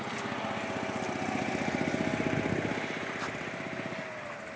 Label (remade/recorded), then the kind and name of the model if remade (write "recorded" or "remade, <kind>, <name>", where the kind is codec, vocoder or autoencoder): recorded